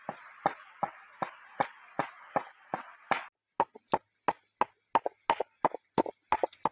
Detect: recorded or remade recorded